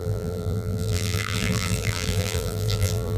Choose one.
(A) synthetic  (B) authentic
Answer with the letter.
A